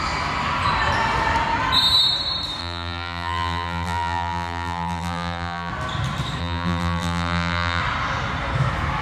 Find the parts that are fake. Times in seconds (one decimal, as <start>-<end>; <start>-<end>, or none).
2.6-5.7; 6.4-7.8